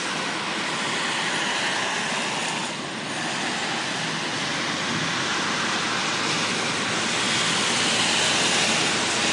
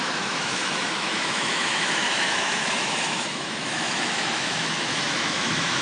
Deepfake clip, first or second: second